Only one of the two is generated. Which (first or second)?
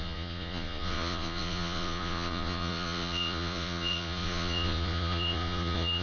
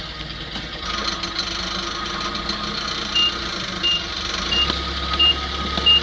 first